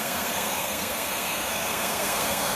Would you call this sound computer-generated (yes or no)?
yes